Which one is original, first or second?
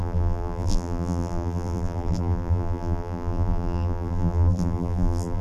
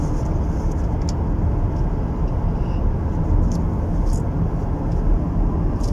second